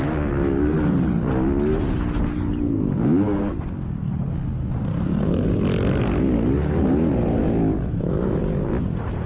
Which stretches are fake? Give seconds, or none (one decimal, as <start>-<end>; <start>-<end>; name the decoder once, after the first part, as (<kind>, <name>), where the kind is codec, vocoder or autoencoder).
7.4-8.4 (autoencoder, DAC-VAE)